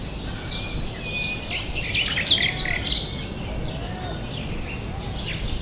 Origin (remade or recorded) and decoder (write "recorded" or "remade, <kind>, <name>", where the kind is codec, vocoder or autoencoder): recorded